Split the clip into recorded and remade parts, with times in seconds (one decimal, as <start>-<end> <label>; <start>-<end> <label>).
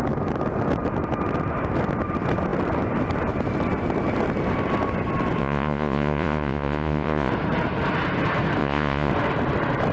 0.0-5.4 recorded; 5.4-7.3 remade; 7.3-8.6 recorded; 8.6-9.1 remade; 9.1-9.9 recorded